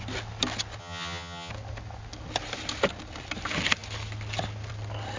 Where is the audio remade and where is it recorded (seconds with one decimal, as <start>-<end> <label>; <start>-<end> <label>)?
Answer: 0.0-0.8 recorded; 0.8-1.5 remade; 1.5-5.2 recorded